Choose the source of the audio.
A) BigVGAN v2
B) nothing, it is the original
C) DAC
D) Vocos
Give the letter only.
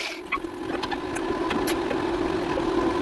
B